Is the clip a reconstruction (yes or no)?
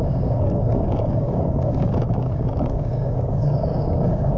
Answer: yes